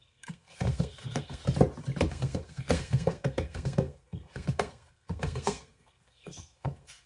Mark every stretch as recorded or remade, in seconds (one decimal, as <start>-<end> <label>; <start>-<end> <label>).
0.0-1.4 remade; 1.4-2.1 recorded; 2.1-7.1 remade